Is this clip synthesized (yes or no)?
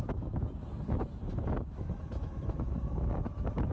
yes